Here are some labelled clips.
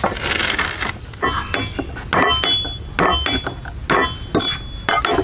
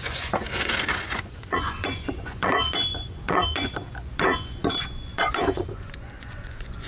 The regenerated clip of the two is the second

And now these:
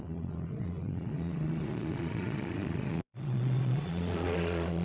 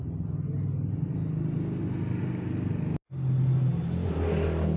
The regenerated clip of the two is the first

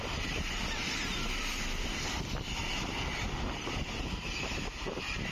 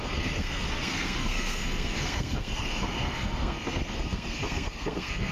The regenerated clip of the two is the second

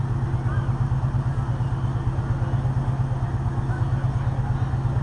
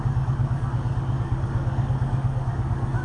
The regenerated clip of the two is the second